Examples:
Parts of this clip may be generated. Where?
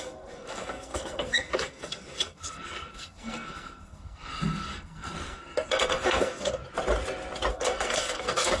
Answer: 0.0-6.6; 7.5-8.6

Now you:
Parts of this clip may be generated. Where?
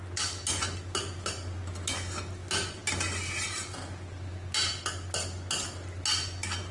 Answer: none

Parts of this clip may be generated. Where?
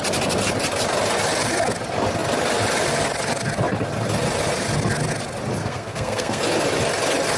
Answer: 5.6-6.4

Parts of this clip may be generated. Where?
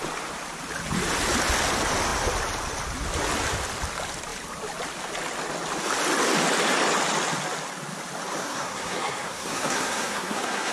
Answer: 8.4-10.7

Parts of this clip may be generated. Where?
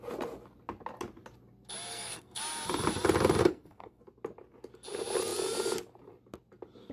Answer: 1.9-2.4; 3.4-4.0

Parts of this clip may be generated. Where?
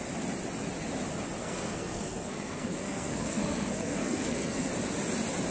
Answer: 1.4-4.7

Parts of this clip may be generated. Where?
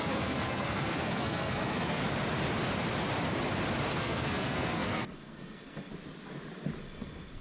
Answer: 0.0-2.0; 4.0-5.9; 6.8-7.4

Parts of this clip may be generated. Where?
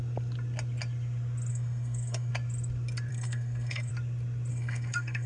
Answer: 1.5-2.3; 3.1-3.9; 4.5-5.3